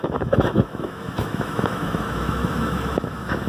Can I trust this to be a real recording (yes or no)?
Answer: no